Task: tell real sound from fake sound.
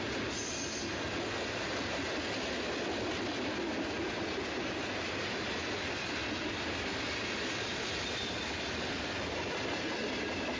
real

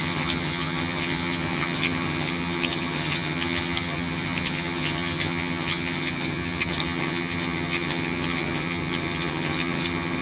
fake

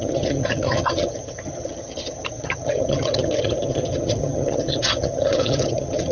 fake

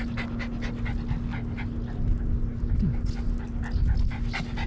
real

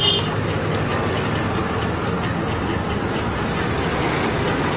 real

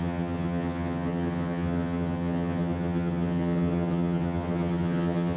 fake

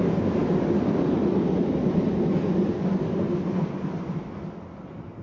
real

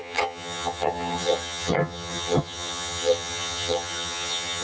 fake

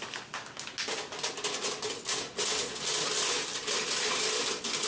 real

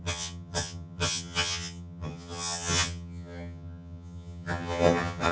fake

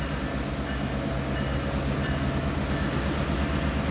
real